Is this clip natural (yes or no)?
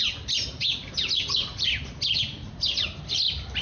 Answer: yes